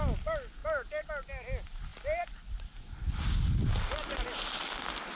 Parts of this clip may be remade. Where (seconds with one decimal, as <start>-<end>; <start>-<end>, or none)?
0.6-1.1